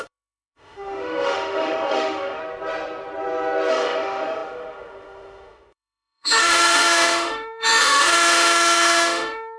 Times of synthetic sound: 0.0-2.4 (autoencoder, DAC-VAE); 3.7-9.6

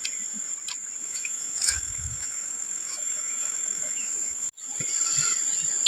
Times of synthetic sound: 1.0-4.5 (autoencoder, DAC-VAE)